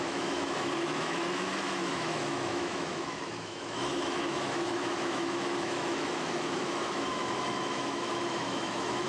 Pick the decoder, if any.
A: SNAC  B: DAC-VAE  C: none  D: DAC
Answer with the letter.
B